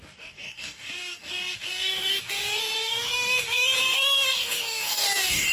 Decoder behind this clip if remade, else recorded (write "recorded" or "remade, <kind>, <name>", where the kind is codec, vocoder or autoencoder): remade, codec, DAC